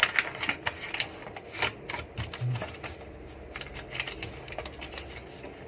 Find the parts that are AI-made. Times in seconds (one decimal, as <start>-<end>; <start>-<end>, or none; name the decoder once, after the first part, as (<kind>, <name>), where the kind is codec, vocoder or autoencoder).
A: none